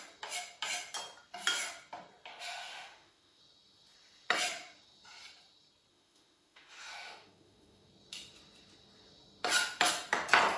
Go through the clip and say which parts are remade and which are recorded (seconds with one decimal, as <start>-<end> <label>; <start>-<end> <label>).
0.0-2.3 recorded; 2.3-3.4 remade; 3.4-5.9 recorded; 5.9-7.9 remade; 7.9-10.6 recorded